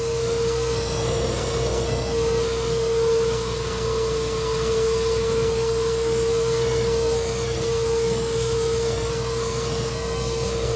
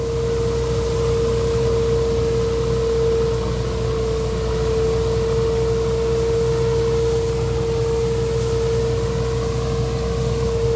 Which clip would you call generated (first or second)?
first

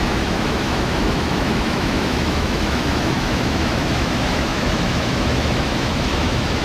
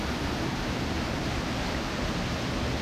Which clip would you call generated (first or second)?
first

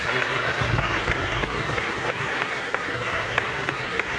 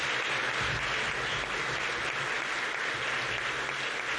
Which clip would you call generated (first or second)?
first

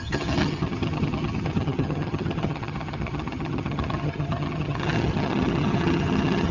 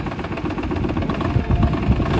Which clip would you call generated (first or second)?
first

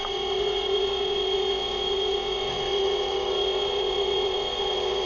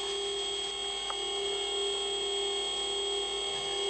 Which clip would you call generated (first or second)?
first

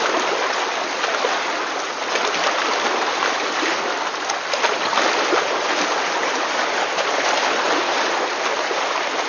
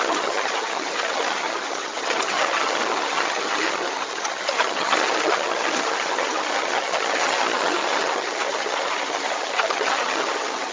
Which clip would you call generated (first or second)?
second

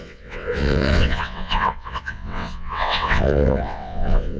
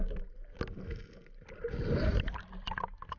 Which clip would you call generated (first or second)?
first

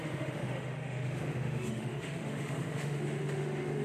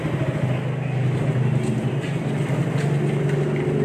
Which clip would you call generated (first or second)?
first